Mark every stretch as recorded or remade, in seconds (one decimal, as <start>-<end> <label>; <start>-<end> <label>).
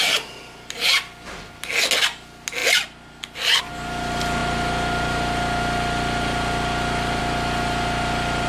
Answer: 0.0-8.5 recorded